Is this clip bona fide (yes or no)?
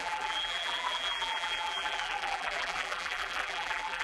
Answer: no